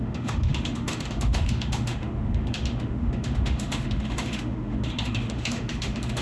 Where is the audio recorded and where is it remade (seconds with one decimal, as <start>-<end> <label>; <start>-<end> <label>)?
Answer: 0.0-6.2 remade